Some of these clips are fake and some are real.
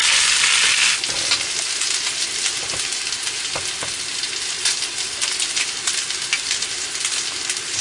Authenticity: real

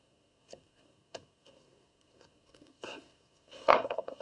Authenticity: fake